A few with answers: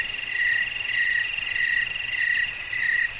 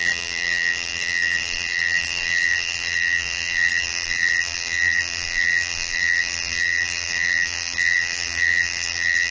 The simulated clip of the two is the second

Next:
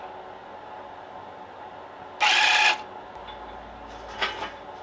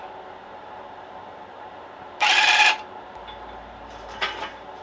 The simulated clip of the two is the second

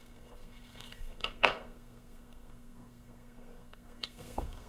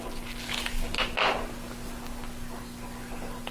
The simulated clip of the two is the first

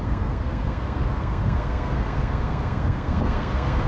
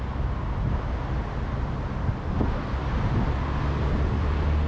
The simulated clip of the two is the first